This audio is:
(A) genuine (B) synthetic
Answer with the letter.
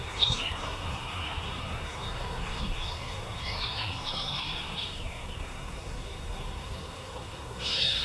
B